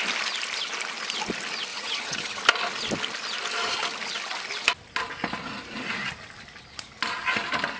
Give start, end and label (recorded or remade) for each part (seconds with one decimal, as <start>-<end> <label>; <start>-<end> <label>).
0.0-1.7 recorded; 1.7-2.4 remade; 2.4-7.8 recorded